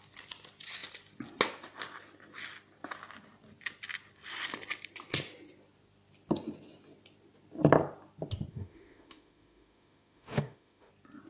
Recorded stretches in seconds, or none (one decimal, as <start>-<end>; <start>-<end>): 0.0-8.5; 10.9-11.3